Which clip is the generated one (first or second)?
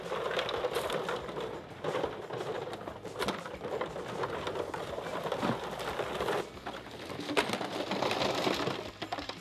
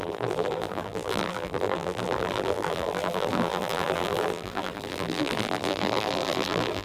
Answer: second